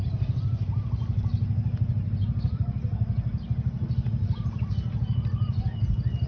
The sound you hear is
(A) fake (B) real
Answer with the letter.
B